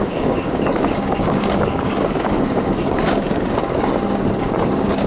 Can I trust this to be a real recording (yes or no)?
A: no